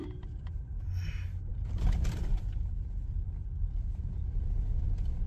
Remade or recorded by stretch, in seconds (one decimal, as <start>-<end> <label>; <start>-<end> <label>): 0.0-0.5 remade; 0.5-1.5 recorded; 1.5-2.4 remade; 2.4-3.4 recorded; 3.4-4.5 remade; 4.5-5.3 recorded